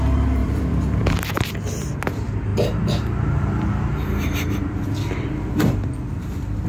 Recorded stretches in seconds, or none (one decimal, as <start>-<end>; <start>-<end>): 0.0-0.4; 1.4-6.7